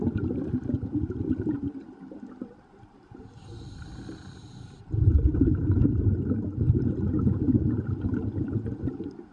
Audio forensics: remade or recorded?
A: recorded